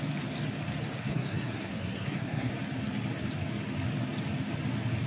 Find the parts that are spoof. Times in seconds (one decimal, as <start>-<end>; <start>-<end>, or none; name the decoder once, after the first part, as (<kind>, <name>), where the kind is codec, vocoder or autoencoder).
1.1-2.5 (codec, SNAC)